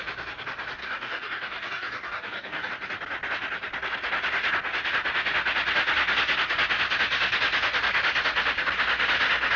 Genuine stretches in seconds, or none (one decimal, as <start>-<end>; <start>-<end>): 0.0-0.8; 2.7-9.6